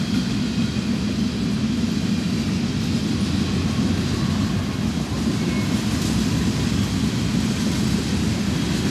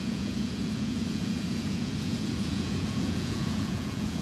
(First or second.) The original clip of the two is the first